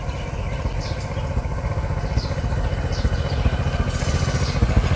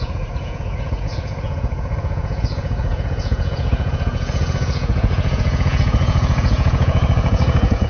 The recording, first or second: first